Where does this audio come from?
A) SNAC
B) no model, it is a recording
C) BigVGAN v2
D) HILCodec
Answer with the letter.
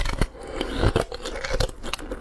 B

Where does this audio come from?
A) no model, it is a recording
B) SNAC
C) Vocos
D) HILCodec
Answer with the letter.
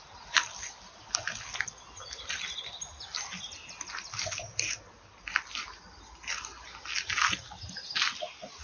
A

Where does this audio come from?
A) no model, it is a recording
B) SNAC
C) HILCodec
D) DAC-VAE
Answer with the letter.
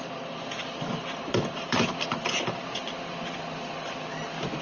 A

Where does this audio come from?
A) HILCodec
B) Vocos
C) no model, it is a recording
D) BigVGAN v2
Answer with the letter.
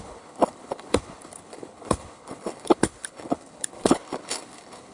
A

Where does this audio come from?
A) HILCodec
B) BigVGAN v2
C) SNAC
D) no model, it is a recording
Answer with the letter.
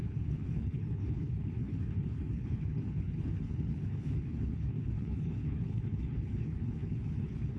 A